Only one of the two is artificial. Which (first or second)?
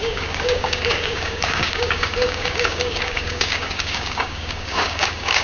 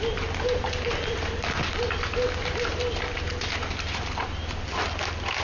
first